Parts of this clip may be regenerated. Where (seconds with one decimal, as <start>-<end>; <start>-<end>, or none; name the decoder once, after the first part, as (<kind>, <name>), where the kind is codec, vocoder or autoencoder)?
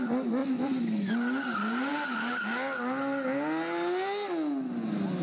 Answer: 0.4-1.1 (vocoder, BigVGAN v2)